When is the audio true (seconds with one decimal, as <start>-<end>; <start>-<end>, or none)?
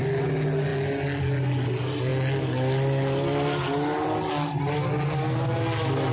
0.0-6.1